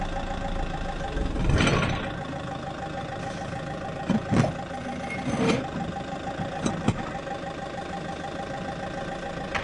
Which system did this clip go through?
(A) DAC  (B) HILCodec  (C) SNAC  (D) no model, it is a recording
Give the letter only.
D